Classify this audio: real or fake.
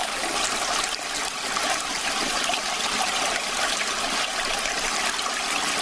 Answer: fake